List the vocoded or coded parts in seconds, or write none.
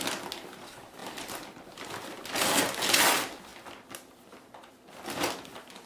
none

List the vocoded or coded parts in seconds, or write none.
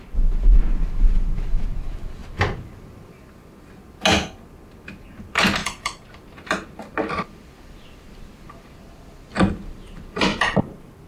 5.6-6.1 (vocoder, BigVGAN v2); 10.3-11.1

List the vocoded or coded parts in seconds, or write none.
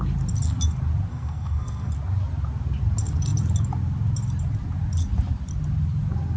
1.1-1.9 (codec, SNAC)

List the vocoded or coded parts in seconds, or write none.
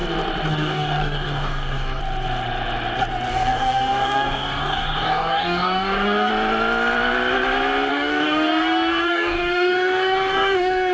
0.5-2.0 (codec, DAC); 3.3-6.3; 7.9-10.9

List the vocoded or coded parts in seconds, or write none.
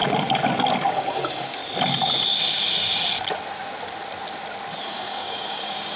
0.9-1.6 (codec, DAC); 4.8-6.0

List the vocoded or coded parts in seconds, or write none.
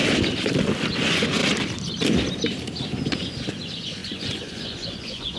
0.9-1.4 (vocoder, Vocos); 3.5-5.4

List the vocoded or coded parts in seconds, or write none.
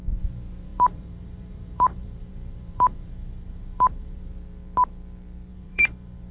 0.7-4.3 (vocoder, BigVGAN v2); 5.5-6.3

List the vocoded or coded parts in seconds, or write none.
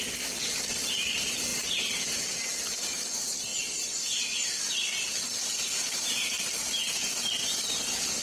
none